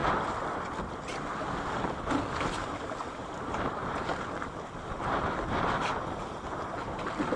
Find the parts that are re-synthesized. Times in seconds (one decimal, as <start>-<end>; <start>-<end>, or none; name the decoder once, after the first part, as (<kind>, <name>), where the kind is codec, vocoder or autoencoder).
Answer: 0.9-7.4 (vocoder, BigVGAN v2)